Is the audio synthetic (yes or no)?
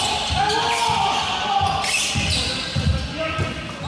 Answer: no